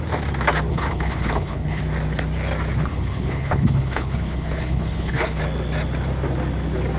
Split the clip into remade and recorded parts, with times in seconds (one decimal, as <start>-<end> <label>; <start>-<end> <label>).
0.0-0.7 recorded; 0.7-1.8 remade; 1.8-2.9 recorded; 2.9-5.4 remade; 5.4-7.0 recorded